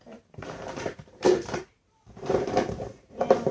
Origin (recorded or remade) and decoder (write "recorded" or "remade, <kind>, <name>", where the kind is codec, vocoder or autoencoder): remade, vocoder, BigVGAN v2